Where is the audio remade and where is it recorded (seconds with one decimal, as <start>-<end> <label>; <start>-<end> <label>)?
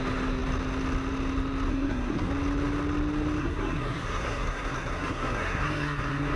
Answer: 0.0-1.7 recorded; 1.7-2.3 remade; 2.3-3.4 recorded; 3.4-6.4 remade